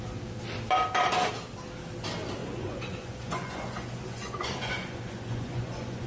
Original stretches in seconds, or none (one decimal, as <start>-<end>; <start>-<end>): 0.0-2.4